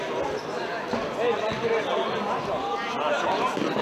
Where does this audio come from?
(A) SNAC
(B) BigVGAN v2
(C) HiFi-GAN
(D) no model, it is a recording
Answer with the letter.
D